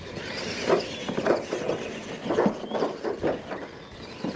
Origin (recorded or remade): recorded